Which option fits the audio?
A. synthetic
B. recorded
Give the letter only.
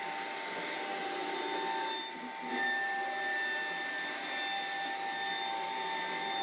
B